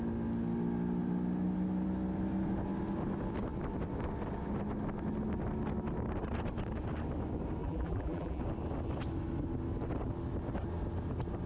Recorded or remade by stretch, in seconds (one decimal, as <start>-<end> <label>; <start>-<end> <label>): 0.0-7.6 recorded; 7.6-8.4 remade; 8.4-11.5 recorded